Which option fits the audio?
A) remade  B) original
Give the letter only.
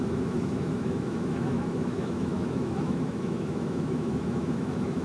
A